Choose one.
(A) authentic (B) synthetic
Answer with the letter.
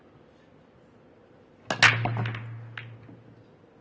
A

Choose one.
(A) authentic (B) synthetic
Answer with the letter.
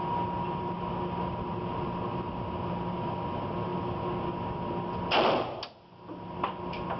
A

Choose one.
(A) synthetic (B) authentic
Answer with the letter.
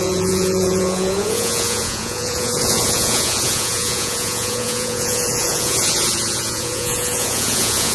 A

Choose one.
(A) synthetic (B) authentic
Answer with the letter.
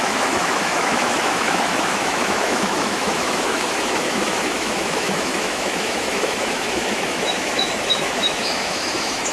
A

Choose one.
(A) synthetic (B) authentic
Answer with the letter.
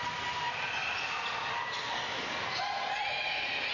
B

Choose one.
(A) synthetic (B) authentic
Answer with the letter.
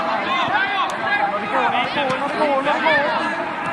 B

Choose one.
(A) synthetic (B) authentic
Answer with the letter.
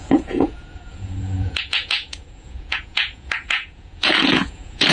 A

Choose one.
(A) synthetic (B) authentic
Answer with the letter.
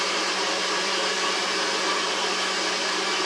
B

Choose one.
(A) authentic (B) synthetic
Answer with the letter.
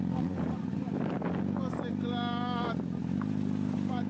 A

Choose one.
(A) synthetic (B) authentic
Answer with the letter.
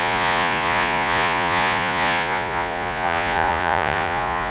A